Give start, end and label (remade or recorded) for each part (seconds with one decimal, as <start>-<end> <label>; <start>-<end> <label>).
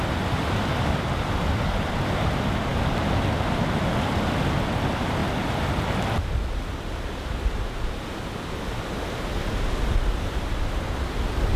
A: 0.0-11.6 recorded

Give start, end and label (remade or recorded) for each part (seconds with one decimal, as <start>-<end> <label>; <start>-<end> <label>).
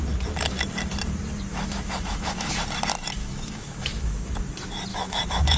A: 0.0-1.5 recorded; 1.5-2.5 remade; 2.5-3.2 recorded; 3.2-4.3 remade; 4.3-4.9 recorded; 4.9-5.6 remade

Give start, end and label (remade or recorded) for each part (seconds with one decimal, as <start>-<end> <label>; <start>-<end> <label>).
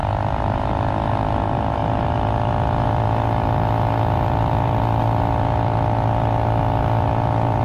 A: 0.0-1.1 remade; 1.1-7.6 recorded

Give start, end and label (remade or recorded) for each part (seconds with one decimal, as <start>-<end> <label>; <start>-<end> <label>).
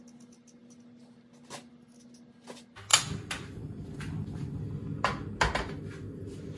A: 0.0-6.6 recorded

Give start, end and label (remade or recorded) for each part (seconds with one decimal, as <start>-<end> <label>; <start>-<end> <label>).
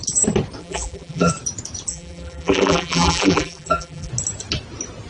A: 0.0-0.6 recorded; 0.6-1.3 remade; 1.3-1.9 recorded; 1.9-4.1 remade; 4.1-5.1 recorded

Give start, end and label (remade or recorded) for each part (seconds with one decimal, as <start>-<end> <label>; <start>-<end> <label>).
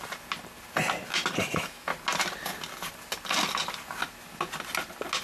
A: 0.0-1.4 recorded; 1.4-1.9 remade; 1.9-5.2 recorded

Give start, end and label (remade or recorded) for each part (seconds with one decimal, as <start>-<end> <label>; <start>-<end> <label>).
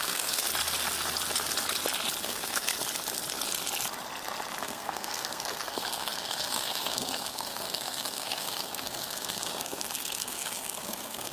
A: 0.0-0.5 remade; 0.5-2.2 recorded; 2.2-2.7 remade; 2.7-4.6 recorded; 4.6-11.3 remade